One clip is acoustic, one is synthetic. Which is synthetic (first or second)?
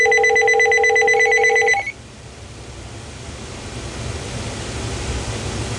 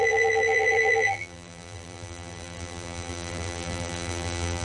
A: second